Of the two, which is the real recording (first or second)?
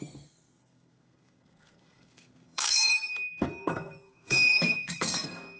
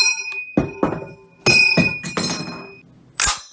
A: second